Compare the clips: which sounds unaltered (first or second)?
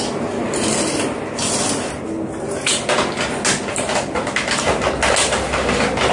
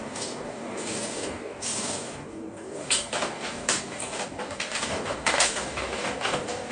first